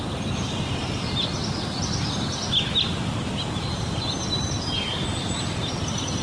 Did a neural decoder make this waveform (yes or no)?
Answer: no